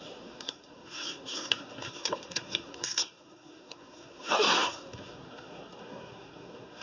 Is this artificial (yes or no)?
yes